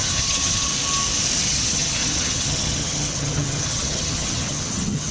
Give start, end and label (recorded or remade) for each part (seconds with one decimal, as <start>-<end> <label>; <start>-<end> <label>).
0.0-0.7 remade; 0.7-1.4 recorded; 1.4-5.1 remade